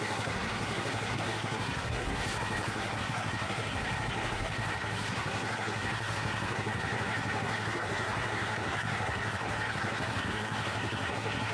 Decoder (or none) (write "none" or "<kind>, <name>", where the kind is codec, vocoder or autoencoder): codec, SNAC